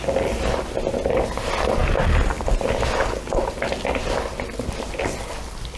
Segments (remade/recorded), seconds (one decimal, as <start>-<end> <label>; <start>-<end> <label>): 0.0-5.8 recorded